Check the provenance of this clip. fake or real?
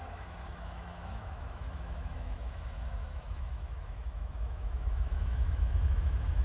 fake